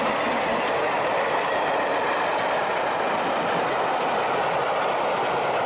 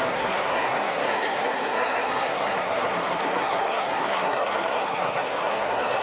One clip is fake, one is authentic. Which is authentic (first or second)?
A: first